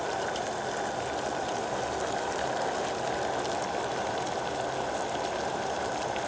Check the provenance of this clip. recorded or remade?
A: recorded